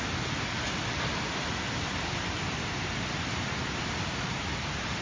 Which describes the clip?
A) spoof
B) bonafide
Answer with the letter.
B